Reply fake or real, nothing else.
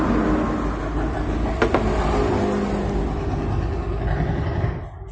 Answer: real